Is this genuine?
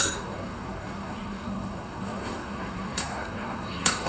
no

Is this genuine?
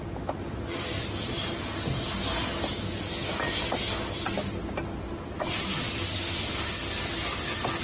yes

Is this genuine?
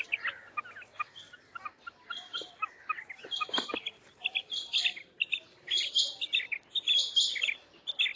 yes